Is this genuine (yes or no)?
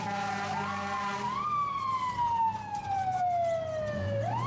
yes